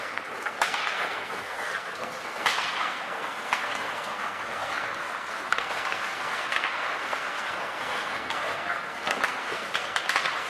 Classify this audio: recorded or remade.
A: remade